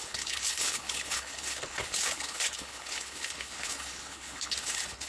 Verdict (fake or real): fake